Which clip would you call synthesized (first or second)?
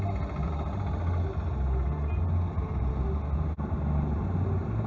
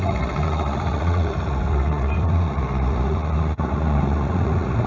second